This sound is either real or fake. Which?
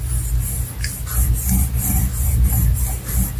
real